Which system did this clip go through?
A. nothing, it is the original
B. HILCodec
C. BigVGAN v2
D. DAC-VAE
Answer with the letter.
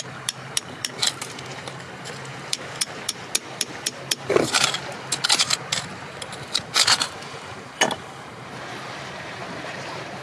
C